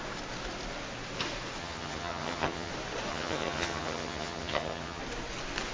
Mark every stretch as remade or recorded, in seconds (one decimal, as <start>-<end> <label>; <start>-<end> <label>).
0.0-1.6 recorded; 1.6-2.7 remade; 2.7-3.1 recorded; 3.1-5.0 remade; 5.0-5.7 recorded